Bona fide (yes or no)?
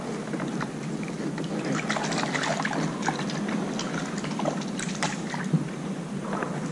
yes